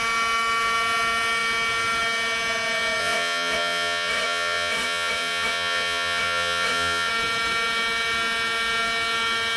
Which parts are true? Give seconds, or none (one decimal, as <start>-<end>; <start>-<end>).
0.0-3.0; 7.1-9.6